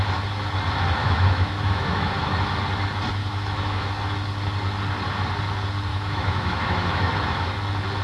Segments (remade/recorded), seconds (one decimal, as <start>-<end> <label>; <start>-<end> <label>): 0.0-1.0 recorded; 1.0-2.4 remade; 2.4-3.2 recorded; 3.2-3.9 remade; 3.9-5.9 recorded; 5.9-7.1 remade; 7.1-8.0 recorded